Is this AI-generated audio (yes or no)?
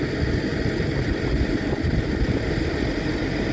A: no